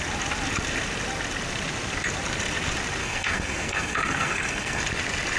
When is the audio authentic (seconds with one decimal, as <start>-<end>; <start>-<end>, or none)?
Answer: 0.0-3.0; 4.8-5.4